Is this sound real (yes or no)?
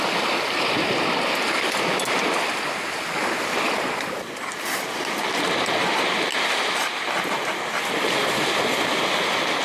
yes